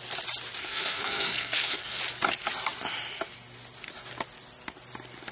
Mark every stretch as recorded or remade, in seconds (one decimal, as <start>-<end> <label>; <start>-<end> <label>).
0.0-0.6 recorded; 0.6-2.0 remade; 2.0-5.3 recorded